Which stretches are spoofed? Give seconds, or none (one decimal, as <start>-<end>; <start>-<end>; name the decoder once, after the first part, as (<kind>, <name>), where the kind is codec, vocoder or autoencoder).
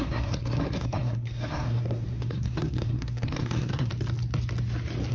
0.0-3.9 (codec, SNAC)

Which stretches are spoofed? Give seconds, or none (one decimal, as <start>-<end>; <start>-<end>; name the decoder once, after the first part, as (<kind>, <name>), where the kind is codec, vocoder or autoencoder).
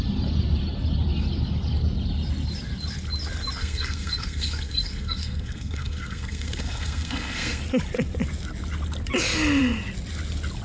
3.6-7.6 (codec, SNAC)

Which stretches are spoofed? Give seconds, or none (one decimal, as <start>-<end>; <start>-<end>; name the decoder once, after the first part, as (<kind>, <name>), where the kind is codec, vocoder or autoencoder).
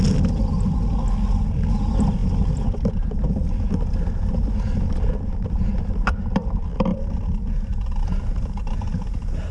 none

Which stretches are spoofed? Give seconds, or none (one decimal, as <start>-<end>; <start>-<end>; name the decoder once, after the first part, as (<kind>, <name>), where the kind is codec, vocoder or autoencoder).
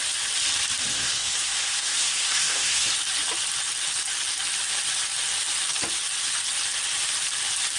0.9-2.9 (codec, SNAC)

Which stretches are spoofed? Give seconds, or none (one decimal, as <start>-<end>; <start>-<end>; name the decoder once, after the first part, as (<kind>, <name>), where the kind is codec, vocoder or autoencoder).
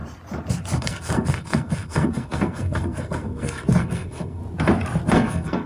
0.8-4.4 (codec, SNAC); 5.1-5.7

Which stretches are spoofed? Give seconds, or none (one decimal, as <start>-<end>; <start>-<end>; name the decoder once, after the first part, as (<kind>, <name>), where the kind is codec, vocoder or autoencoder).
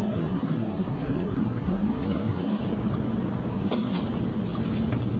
0.0-2.6 (codec, SNAC); 3.5-4.0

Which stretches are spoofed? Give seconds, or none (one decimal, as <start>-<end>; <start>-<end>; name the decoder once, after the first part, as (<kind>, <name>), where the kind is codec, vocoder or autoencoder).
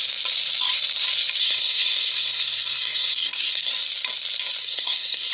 1.4-3.7 (codec, SNAC); 4.6-5.3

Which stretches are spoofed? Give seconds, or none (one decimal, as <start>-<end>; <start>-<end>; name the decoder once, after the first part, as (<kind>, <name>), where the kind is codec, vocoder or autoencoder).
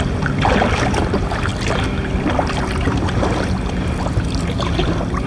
none